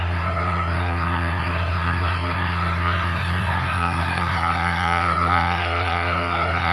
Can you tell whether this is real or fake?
fake